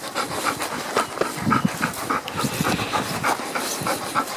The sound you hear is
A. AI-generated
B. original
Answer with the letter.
B